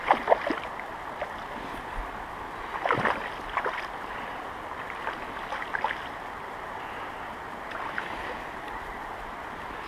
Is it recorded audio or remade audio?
recorded